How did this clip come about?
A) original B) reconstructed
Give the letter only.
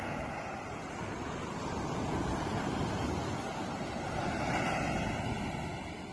A